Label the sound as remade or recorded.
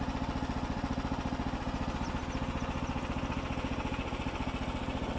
recorded